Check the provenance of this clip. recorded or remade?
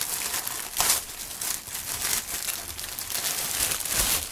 recorded